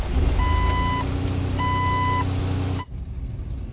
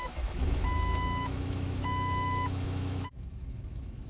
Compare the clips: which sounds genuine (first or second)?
first